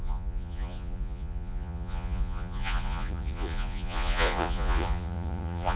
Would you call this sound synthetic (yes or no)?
yes